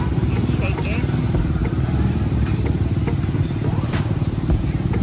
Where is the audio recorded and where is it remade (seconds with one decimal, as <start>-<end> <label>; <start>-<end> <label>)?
0.0-1.6 recorded; 1.6-4.6 remade; 4.6-5.0 recorded

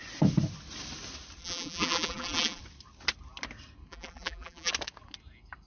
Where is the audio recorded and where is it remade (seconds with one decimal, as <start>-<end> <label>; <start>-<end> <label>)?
0.0-1.4 recorded; 1.4-2.6 remade; 2.6-3.9 recorded; 3.9-4.7 remade; 4.7-5.7 recorded

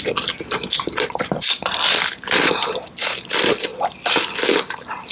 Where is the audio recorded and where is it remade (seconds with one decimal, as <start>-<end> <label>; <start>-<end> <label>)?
0.0-5.1 recorded

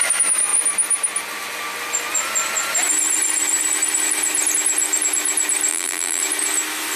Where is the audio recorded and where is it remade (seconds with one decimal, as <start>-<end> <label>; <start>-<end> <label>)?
0.0-5.7 recorded; 5.7-6.2 remade; 6.2-7.0 recorded